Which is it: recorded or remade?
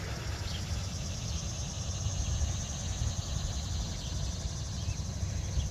recorded